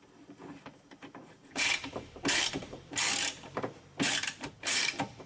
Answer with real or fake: fake